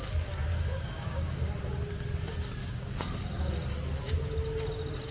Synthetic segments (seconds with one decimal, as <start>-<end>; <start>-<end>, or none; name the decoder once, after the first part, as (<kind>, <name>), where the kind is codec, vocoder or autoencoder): 0.5-1.5 (codec, DAC); 2.6-3.2